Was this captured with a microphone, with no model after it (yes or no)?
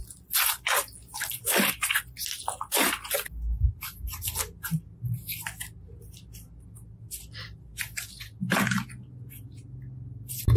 yes